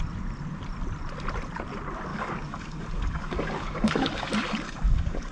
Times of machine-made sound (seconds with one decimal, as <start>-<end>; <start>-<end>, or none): 2.1-5.3